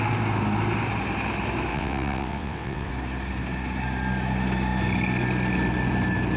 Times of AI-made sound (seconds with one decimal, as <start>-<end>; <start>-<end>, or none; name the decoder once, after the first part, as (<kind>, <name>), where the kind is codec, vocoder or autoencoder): 1.7-2.9 (vocoder, WaveNeXt)